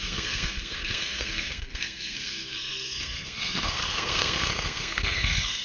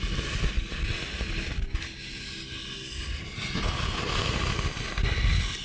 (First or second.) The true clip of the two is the second